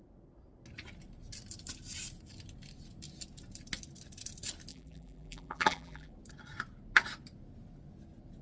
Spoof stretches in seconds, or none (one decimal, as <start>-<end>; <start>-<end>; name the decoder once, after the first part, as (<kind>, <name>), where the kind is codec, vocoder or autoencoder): 4.7-6.1 (vocoder, BigVGAN v2)